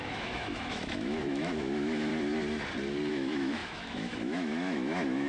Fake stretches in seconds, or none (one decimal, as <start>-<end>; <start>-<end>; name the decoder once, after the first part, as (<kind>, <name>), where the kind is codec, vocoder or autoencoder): 0.0-2.1 (autoencoder, DAC-VAE); 3.1-5.3